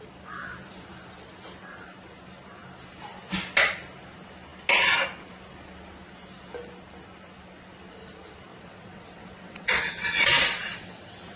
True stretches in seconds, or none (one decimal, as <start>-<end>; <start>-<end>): 0.0-8.5